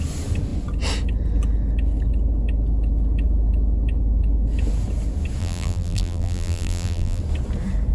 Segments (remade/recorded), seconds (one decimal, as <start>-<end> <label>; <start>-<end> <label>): 0.0-5.4 recorded; 5.4-7.2 remade; 7.2-7.9 recorded